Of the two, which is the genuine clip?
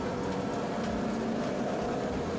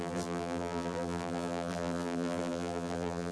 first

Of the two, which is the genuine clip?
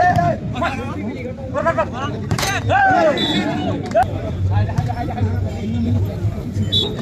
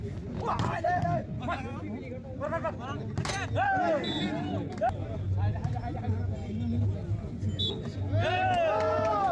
second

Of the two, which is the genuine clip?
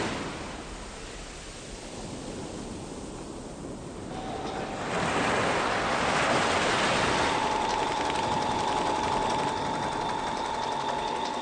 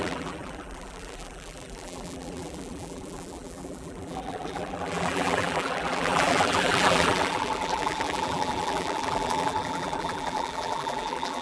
first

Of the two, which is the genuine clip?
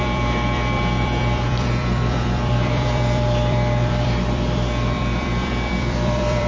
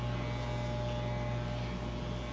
second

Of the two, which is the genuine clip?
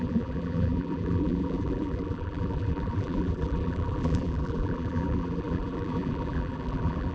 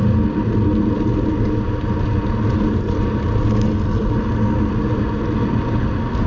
second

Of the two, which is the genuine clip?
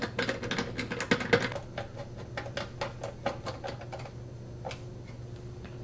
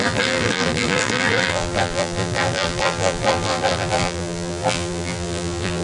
first